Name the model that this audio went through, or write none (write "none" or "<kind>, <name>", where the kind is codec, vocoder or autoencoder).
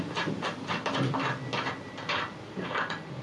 none